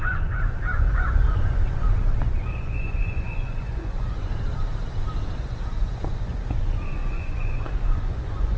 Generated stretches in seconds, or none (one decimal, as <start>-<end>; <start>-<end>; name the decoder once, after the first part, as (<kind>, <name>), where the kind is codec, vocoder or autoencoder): 0.0-4.3 (vocoder, Vocos); 5.4-8.6